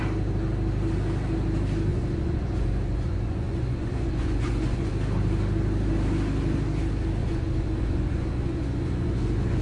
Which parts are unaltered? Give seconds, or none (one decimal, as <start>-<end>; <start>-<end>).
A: 0.0-1.9; 4.9-7.2